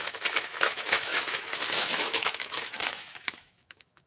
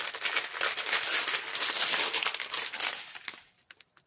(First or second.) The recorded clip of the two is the second